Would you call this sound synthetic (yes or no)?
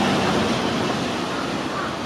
no